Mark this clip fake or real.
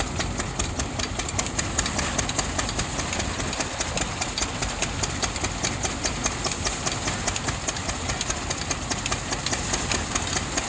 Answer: real